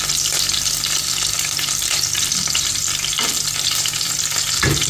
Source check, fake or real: fake